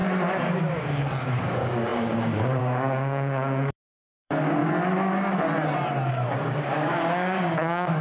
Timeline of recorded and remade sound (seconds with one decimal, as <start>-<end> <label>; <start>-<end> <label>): 0.0-0.6 recorded; 0.6-4.6 remade; 4.6-6.1 recorded; 6.1-8.0 remade